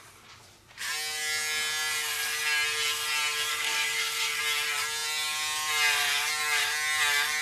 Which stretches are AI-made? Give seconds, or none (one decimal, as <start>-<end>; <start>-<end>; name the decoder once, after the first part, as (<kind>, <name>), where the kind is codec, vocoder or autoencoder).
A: 3.5-4.4 (codec, SNAC)